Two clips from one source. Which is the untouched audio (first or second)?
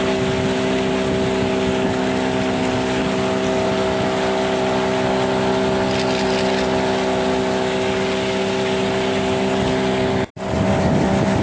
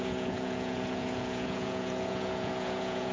first